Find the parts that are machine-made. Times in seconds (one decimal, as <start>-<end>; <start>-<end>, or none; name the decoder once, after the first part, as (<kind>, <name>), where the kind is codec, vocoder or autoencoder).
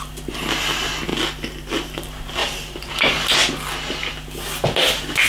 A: 2.4-2.9 (vocoder, BigVGAN v2)